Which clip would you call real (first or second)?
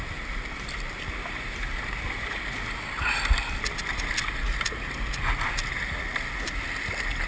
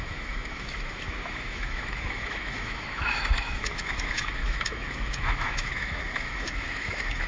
first